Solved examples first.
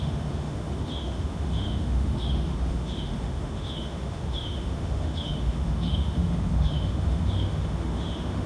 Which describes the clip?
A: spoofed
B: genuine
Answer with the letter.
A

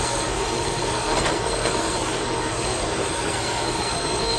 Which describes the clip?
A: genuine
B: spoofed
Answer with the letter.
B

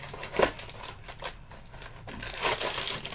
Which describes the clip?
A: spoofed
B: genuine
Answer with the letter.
B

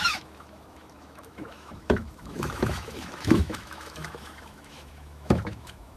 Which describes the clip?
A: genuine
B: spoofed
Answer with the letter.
B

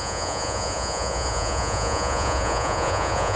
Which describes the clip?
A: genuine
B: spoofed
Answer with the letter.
B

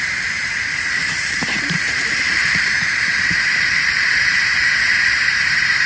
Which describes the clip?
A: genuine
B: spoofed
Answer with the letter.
B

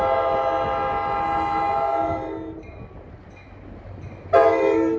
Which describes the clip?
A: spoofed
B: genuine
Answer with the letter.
B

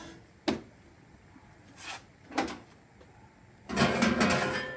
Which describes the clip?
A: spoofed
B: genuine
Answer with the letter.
B